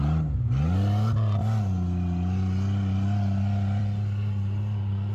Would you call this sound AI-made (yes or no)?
no